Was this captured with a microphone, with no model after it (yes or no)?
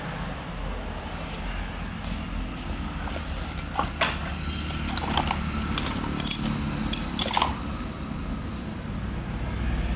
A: yes